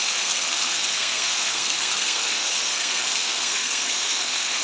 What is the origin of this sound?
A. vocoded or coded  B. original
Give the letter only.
A